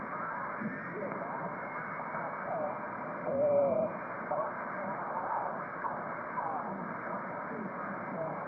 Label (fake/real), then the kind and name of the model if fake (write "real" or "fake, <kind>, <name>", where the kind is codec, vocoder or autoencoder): real